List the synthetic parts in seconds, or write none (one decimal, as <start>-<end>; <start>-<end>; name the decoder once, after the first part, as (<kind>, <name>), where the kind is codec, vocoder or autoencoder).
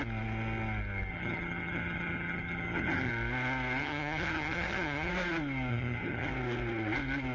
1.1-3.1 (vocoder, HiFi-GAN); 3.8-5.1; 5.7-6.3